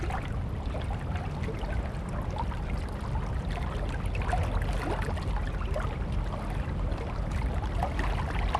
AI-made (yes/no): no